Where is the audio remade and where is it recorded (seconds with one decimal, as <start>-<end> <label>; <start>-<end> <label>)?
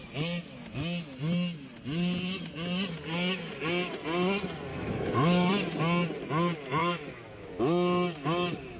0.0-4.7 recorded; 4.7-5.5 remade; 5.5-6.8 recorded; 6.8-7.6 remade; 7.6-8.8 recorded